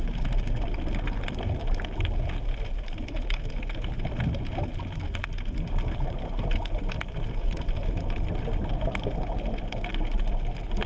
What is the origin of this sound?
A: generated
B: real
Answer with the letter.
B